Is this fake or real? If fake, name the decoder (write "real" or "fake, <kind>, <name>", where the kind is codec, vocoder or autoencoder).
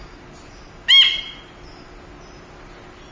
real